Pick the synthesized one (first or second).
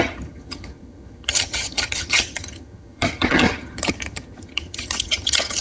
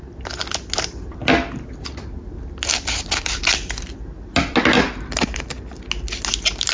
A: first